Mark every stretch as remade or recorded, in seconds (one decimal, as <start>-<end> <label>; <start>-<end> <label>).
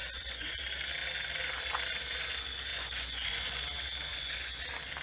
0.0-0.6 remade; 0.6-2.7 recorded; 2.7-3.6 remade; 3.6-4.1 recorded; 4.1-4.6 remade; 4.6-5.0 recorded